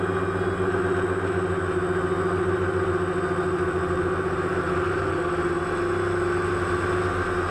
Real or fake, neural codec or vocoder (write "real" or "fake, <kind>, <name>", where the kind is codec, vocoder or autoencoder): real